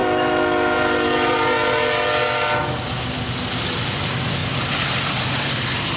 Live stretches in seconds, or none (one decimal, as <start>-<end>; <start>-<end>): 0.0-6.0